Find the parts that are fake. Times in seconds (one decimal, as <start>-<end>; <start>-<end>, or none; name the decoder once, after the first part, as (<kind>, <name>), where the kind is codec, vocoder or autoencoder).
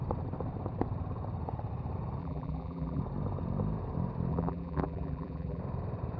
2.2-3.0 (vocoder, BigVGAN v2); 4.3-5.6